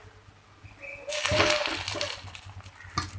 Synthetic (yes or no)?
no